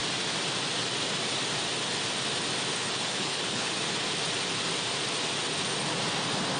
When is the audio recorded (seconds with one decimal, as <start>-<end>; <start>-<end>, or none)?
0.0-2.7; 3.7-6.6